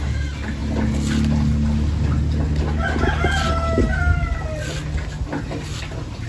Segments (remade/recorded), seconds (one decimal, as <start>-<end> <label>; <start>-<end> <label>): 0.0-6.3 recorded